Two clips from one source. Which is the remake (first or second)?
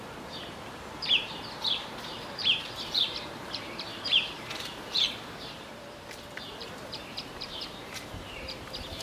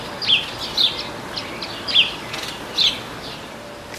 first